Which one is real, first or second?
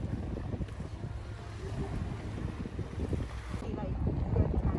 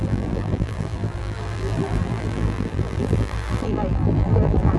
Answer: first